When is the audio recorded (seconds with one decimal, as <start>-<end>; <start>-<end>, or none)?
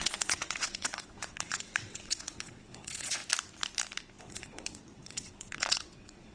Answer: 3.2-4.2